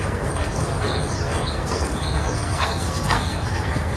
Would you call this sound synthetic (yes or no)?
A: yes